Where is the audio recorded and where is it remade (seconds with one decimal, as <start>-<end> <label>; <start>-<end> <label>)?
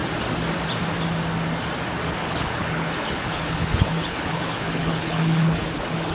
0.0-2.1 recorded; 2.1-6.1 remade